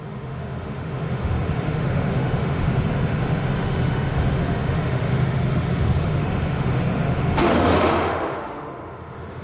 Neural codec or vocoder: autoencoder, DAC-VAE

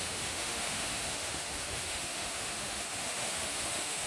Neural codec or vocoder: autoencoder, DAC-VAE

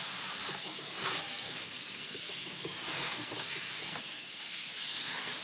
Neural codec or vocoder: codec, SNAC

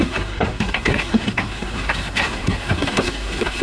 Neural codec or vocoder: codec, SNAC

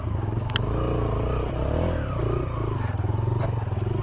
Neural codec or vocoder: none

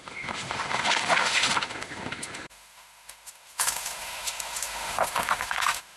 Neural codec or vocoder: autoencoder, DAC-VAE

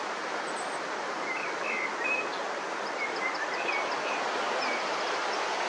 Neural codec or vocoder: none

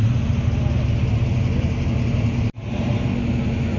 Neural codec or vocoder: none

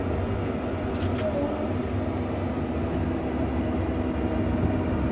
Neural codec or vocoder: none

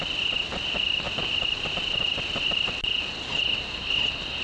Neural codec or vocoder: none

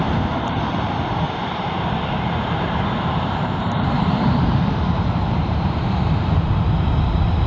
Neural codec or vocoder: vocoder, BigVGAN v2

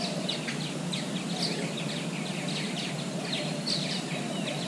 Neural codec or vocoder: none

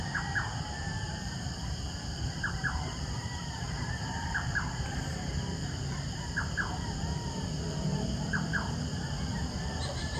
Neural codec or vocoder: vocoder, BigVGAN v2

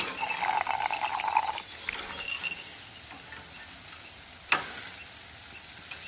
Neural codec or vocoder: none